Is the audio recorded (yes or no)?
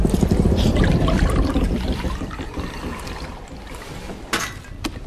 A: no